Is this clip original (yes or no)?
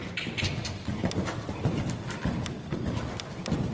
yes